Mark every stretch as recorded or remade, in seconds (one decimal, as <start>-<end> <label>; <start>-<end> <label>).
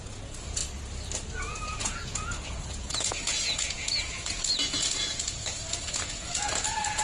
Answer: 0.0-0.6 remade; 0.6-1.3 recorded; 1.3-7.0 remade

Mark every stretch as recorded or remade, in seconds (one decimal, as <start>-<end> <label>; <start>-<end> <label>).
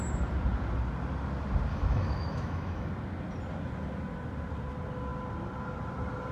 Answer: 0.0-1.7 recorded; 1.7-2.9 remade; 2.9-6.3 recorded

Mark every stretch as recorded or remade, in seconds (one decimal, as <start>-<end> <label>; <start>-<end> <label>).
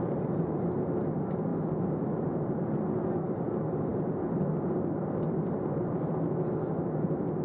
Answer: 0.0-3.9 recorded; 3.9-4.5 remade; 4.5-7.4 recorded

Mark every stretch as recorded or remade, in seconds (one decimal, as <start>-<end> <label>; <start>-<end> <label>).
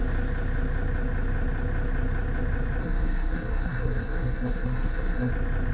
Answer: 0.0-2.8 recorded; 2.8-5.3 remade; 5.3-5.7 recorded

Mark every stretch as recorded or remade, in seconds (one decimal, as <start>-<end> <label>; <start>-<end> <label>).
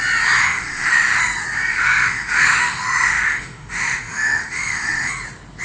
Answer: 0.0-0.4 recorded; 0.4-1.2 remade; 1.2-1.7 recorded; 1.7-5.1 remade; 5.1-5.6 recorded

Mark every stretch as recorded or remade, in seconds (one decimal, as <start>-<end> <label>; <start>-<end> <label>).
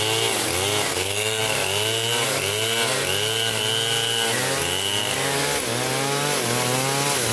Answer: 0.0-0.9 recorded; 0.9-1.4 remade; 1.4-7.3 recorded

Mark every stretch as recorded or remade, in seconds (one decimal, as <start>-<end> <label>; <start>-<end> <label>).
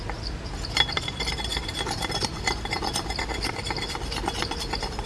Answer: 0.0-1.5 recorded; 1.5-2.2 remade; 2.2-5.1 recorded